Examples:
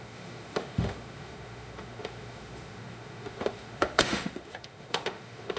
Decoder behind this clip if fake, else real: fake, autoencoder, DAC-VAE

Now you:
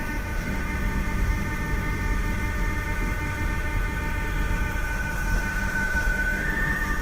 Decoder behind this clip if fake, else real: fake, autoencoder, DAC-VAE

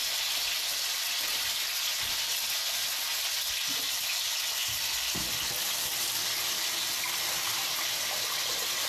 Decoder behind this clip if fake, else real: real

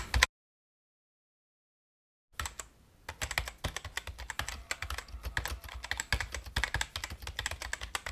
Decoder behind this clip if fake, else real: real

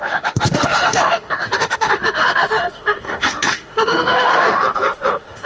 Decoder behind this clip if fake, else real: fake, autoencoder, DAC-VAE